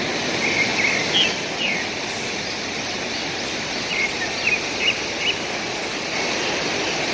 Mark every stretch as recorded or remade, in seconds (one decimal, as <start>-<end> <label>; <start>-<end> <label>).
0.0-7.1 recorded